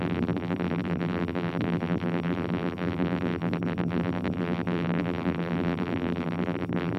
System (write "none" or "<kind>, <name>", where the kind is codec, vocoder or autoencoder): vocoder, BigVGAN v2